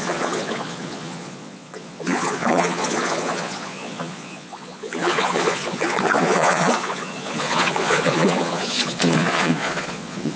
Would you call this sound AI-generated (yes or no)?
yes